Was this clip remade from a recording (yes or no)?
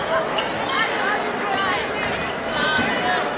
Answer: no